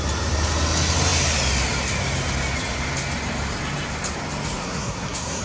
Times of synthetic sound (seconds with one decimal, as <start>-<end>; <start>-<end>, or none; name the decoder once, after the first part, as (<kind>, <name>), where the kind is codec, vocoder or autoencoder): 4.6-5.4 (codec, SNAC)